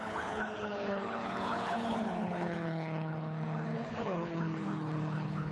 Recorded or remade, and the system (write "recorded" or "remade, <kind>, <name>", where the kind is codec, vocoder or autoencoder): remade, codec, HILCodec